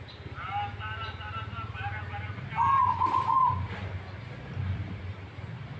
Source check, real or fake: real